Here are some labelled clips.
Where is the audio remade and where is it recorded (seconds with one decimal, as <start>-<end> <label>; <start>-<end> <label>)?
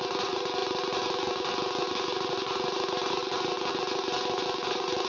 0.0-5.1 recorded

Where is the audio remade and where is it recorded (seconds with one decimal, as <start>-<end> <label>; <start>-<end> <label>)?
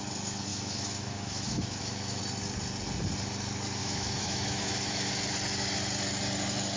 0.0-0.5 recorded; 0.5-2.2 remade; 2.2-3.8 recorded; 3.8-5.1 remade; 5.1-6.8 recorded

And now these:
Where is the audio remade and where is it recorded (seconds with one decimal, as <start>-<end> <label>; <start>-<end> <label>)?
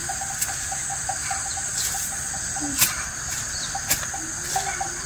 0.0-5.1 recorded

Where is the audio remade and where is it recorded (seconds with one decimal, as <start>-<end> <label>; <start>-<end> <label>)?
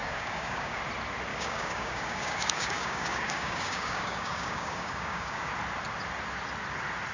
0.0-0.8 remade; 0.8-1.3 recorded; 1.3-5.5 remade; 5.5-7.1 recorded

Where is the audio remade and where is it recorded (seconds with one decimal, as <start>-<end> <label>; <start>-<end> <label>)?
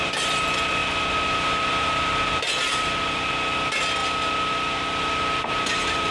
0.0-6.1 recorded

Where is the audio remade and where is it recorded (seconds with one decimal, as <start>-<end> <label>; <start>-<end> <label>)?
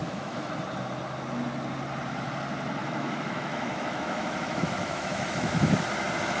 0.0-0.5 remade; 0.5-2.8 recorded; 2.8-5.7 remade; 5.7-6.4 recorded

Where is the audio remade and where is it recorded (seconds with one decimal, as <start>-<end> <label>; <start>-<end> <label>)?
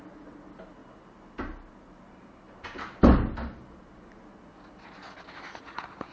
0.0-6.1 recorded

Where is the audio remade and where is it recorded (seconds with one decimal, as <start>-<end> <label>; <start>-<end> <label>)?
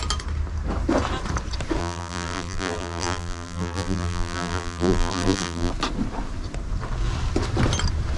0.0-1.8 recorded; 1.8-5.7 remade; 5.7-8.2 recorded